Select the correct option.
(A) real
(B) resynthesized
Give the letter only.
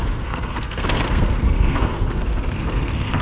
B